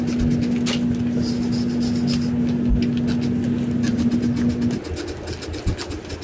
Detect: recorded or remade recorded